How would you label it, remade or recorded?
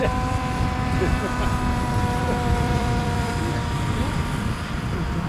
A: remade